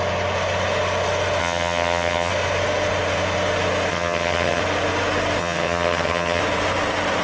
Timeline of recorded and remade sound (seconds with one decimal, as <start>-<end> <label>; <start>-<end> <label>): 0.0-1.4 recorded; 1.4-2.3 remade; 2.3-3.9 recorded; 3.9-4.6 remade; 4.6-5.4 recorded; 5.4-6.4 remade; 6.4-7.2 recorded